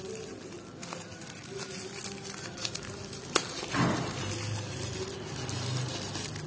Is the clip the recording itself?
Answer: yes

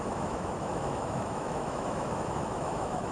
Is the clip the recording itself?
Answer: no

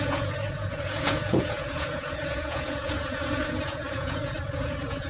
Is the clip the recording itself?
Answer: no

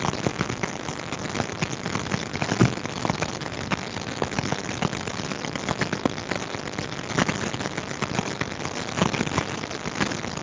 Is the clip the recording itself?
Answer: yes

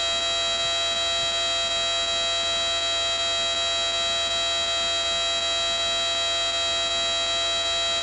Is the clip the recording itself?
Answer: yes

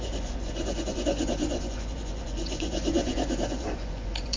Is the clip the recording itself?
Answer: no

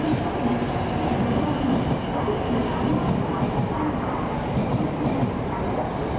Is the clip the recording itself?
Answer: yes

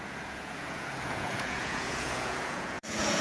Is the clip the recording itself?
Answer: no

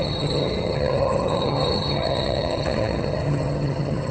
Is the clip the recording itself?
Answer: no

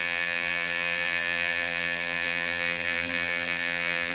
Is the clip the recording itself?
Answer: no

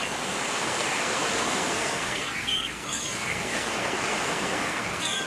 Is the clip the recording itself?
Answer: no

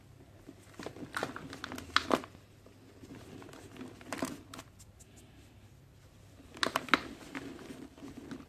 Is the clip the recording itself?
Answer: yes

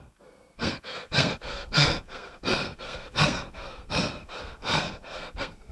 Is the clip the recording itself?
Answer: no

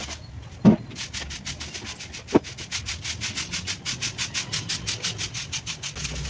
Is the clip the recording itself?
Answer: yes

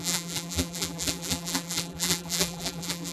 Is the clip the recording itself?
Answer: no